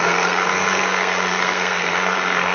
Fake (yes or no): yes